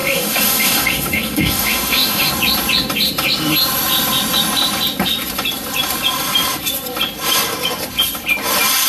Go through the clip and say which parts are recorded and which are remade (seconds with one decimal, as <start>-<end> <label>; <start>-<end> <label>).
0.0-2.3 remade; 2.3-8.9 recorded